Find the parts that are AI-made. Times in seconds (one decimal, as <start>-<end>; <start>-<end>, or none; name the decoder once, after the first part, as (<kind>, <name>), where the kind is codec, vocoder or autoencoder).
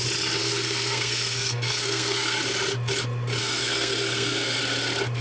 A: 0.4-2.4 (codec, SNAC); 3.4-4.6